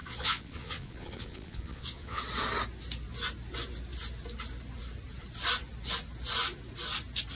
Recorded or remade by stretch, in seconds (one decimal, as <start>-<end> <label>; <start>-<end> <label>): 0.0-2.2 remade; 2.2-7.3 recorded